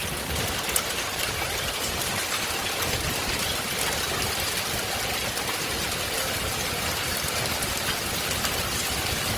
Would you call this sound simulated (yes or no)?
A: no